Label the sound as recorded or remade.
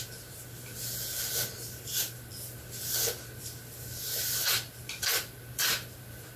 recorded